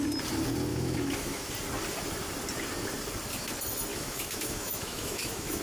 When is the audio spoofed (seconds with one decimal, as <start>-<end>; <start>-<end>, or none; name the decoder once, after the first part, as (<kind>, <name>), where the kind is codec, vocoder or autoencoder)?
0.7-1.5 (autoencoder, DAC-VAE); 3.9-5.6